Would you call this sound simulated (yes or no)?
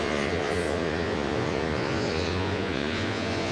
yes